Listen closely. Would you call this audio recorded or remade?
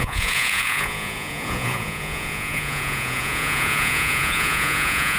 remade